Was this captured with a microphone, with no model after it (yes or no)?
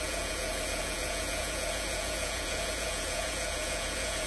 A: no